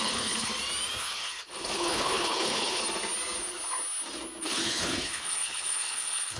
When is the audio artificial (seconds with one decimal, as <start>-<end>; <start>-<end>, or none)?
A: 0.0-0.5; 1.0-2.8; 4.4-6.4